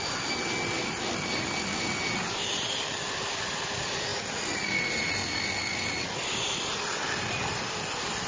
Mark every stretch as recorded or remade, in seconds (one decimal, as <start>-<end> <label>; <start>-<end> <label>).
0.0-8.3 recorded

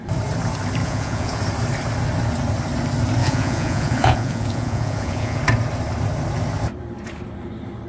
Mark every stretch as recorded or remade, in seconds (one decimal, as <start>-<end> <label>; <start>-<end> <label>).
0.0-0.8 recorded; 0.8-1.4 remade; 1.4-3.2 recorded; 3.2-5.4 remade; 5.4-7.9 recorded

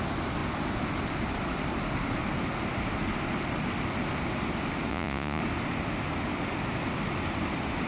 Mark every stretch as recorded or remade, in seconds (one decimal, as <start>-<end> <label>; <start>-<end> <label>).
0.0-4.9 recorded; 4.9-5.4 remade; 5.4-7.9 recorded

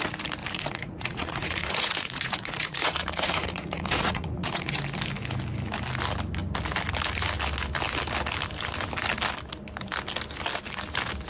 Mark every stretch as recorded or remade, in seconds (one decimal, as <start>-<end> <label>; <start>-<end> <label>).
0.0-0.4 recorded; 0.4-4.7 remade; 4.7-11.3 recorded